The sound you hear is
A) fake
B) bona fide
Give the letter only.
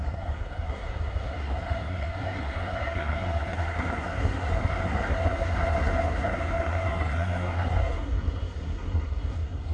A